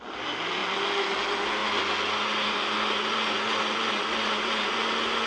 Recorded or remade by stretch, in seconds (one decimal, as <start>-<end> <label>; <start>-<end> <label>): 0.0-5.3 recorded